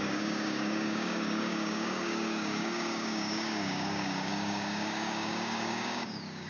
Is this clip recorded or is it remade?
remade